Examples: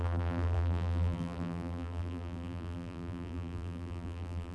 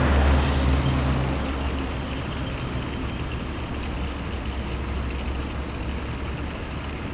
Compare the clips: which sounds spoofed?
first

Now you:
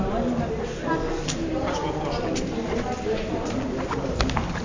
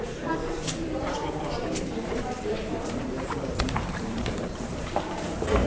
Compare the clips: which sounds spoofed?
second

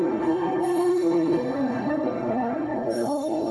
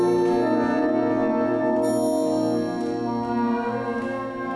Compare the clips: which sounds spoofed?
first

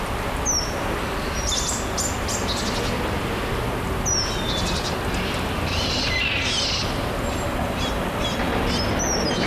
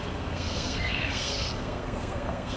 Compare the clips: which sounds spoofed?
second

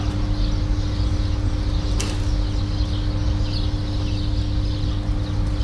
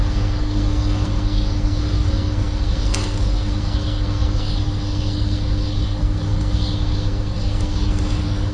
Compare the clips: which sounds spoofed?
second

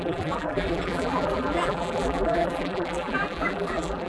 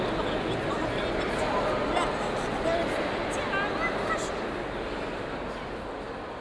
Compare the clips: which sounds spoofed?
first